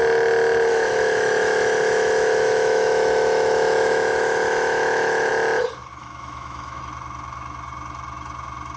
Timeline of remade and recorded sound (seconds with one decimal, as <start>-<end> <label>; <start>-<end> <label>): 0.0-0.7 recorded; 0.7-5.3 remade; 5.3-5.9 recorded; 5.9-6.8 remade; 6.8-8.8 recorded

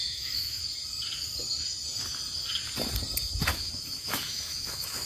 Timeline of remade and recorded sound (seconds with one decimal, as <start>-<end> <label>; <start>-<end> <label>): 0.0-0.6 remade; 0.6-3.5 recorded; 3.5-5.1 remade

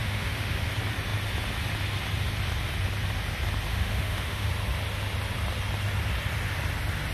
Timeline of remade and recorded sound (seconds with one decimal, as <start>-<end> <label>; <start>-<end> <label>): 0.0-0.7 remade; 0.7-3.7 recorded; 3.7-4.5 remade; 4.5-7.1 recorded